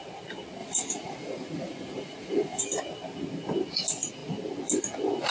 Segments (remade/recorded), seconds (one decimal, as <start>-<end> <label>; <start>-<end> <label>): 0.0-0.6 recorded; 0.6-2.6 remade; 2.6-5.3 recorded